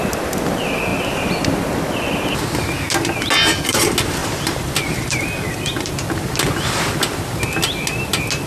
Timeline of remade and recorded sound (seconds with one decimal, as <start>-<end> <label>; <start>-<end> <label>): 0.0-0.9 recorded; 0.9-1.8 remade; 1.8-4.2 recorded; 4.2-5.9 remade; 5.9-8.5 recorded

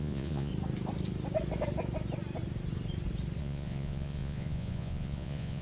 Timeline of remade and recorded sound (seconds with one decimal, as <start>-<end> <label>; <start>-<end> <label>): 0.0-0.5 remade; 0.5-3.4 recorded; 3.4-5.6 remade

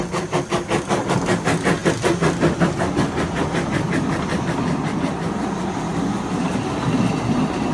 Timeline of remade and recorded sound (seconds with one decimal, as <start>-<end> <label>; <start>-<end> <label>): 0.0-7.7 recorded

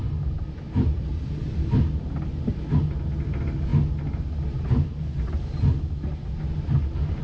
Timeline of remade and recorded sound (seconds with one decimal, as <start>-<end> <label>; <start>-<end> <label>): 0.0-7.2 recorded

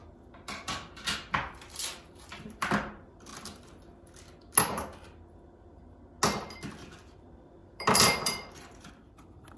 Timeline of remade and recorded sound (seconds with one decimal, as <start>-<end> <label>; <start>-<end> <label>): 0.0-3.3 remade; 3.3-6.5 recorded; 6.5-9.6 remade

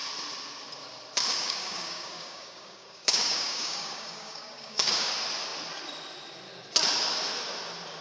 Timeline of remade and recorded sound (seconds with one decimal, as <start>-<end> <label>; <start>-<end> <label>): 0.0-1.3 recorded; 1.3-5.1 remade; 5.1-8.0 recorded